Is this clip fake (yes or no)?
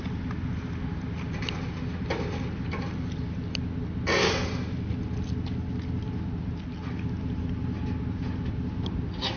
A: no